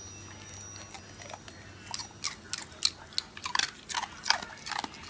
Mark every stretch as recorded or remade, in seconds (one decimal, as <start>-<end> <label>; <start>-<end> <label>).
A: 0.0-5.1 recorded